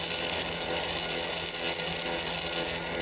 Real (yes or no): yes